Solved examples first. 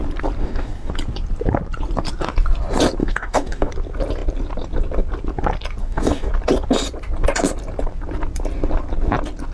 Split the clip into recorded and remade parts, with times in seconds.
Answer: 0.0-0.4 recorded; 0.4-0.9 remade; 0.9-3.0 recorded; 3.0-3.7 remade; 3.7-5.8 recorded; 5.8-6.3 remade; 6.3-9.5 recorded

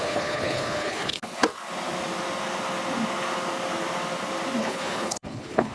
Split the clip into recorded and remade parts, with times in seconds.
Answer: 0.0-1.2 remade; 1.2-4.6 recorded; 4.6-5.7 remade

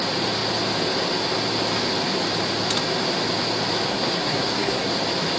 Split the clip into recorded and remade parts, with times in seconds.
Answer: 0.0-3.9 recorded; 3.9-4.9 remade; 4.9-5.4 recorded

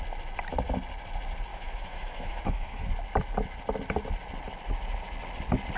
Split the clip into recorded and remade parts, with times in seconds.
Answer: 0.0-1.5 recorded; 1.5-2.9 remade; 2.9-5.8 recorded

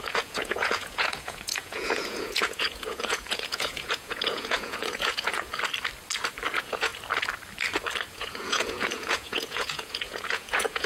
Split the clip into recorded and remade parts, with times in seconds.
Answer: 0.0-5.5 remade; 5.5-6.5 recorded; 6.5-6.9 remade; 6.9-8.1 recorded; 8.1-10.9 remade

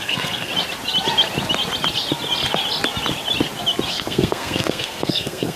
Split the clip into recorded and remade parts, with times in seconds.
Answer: 0.0-0.5 remade; 0.5-3.9 recorded; 3.9-5.6 remade

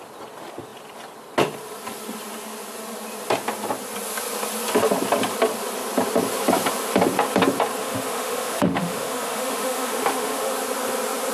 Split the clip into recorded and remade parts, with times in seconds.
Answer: 0.0-7.8 recorded; 7.8-10.5 remade; 10.5-11.3 recorded

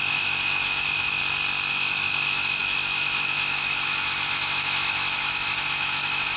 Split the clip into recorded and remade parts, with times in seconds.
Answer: 0.0-1.2 remade; 1.2-1.7 recorded; 1.7-6.4 remade